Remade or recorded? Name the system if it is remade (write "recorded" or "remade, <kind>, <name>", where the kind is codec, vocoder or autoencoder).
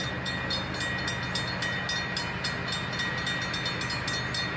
recorded